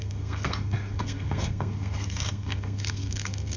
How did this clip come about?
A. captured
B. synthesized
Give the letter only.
B